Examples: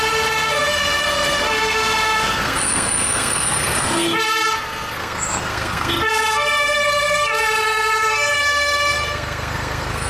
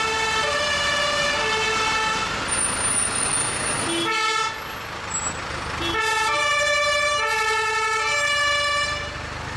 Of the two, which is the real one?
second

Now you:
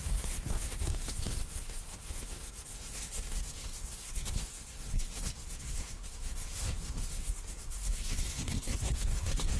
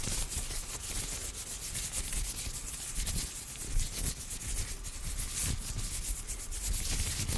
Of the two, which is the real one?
second